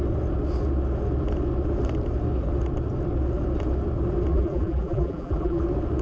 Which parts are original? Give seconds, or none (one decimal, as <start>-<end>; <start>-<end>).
0.0-4.3; 5.6-6.0